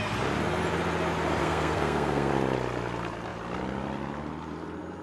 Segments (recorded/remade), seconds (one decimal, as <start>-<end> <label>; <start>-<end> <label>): 0.0-1.4 recorded; 1.4-2.3 remade; 2.3-5.0 recorded